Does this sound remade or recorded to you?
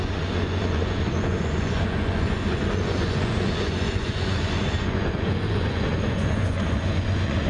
remade